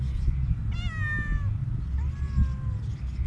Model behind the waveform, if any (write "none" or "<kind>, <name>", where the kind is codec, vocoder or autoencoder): none